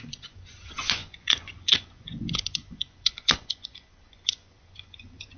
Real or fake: fake